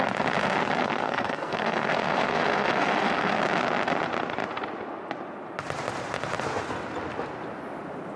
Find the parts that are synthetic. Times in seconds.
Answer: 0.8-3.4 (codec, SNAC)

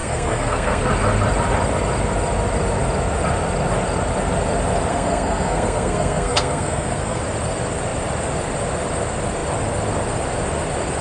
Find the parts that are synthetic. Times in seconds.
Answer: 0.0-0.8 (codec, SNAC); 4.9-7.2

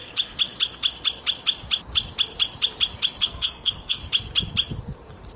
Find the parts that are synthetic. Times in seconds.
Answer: 3.2-4.0 (codec, SNAC)